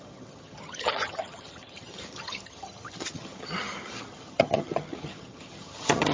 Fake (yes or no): yes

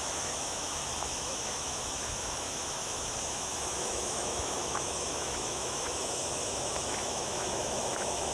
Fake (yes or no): yes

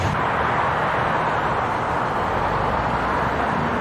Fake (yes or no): no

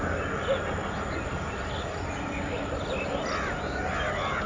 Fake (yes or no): no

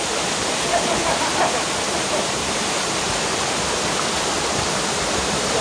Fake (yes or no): yes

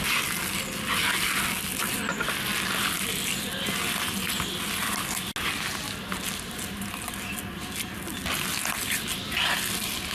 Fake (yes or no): no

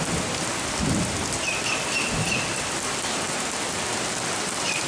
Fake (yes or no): no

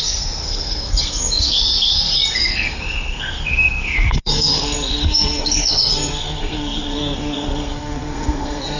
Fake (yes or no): yes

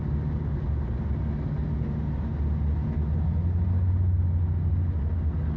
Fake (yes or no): no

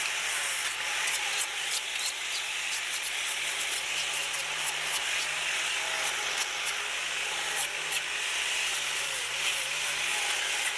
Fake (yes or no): no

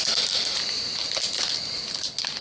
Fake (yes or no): no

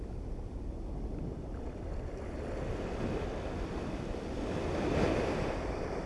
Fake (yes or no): no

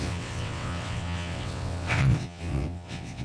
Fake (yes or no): yes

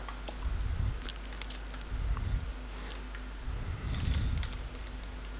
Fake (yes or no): no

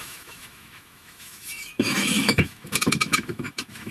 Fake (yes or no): yes